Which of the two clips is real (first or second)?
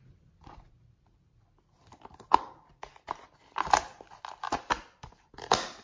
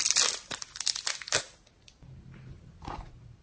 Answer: second